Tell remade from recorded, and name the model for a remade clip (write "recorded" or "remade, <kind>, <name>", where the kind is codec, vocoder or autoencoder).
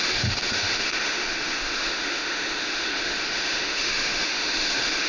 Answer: remade, autoencoder, DAC-VAE